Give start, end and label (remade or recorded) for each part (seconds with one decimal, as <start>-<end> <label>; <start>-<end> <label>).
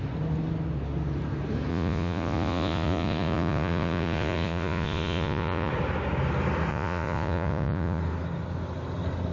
0.0-1.7 recorded; 1.7-5.7 remade; 5.7-6.7 recorded; 6.7-8.0 remade; 8.0-9.3 recorded